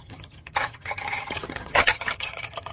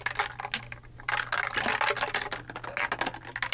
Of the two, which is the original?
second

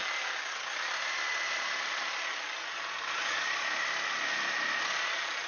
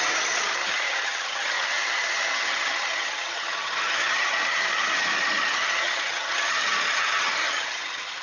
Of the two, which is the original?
first